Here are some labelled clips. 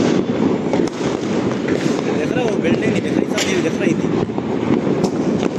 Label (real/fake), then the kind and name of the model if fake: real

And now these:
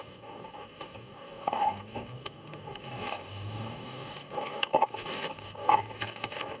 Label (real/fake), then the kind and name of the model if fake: fake, codec, DAC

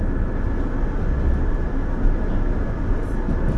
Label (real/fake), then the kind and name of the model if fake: real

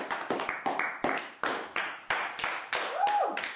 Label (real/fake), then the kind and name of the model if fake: real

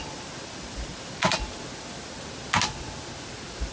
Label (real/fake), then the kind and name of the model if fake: real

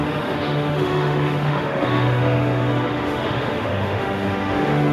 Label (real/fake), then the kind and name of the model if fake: fake, autoencoder, DAC-VAE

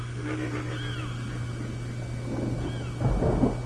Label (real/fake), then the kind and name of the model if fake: real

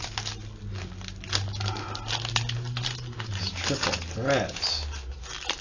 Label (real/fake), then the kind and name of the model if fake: real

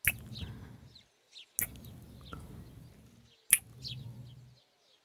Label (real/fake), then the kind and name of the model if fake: real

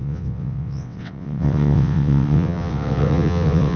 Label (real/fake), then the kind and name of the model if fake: fake, vocoder, WaveNeXt